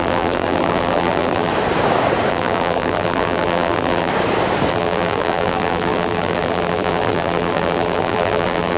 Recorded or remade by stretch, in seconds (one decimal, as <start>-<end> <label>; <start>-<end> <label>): 0.0-1.5 remade; 1.5-2.3 recorded; 2.3-4.1 remade; 4.1-4.7 recorded; 4.7-8.8 remade